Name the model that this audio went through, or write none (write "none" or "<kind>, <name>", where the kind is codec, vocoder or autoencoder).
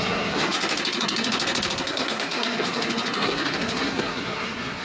codec, SNAC